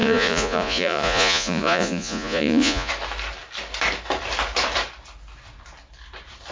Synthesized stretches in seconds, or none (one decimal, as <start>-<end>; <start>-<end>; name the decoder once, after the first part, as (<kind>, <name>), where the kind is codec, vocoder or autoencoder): 0.0-2.9 (vocoder, Vocos)